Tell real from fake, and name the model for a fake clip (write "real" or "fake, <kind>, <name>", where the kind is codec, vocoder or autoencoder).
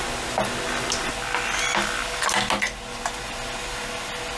real